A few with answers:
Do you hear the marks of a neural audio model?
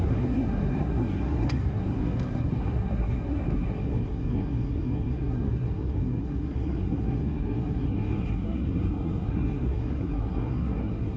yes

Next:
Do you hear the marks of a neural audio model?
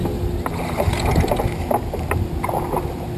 no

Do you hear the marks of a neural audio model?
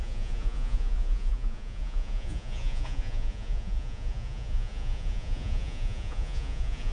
yes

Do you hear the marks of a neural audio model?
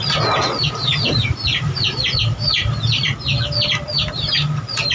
no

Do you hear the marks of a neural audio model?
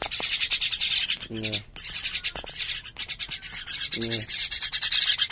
no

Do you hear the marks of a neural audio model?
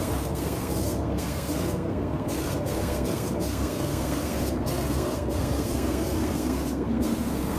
yes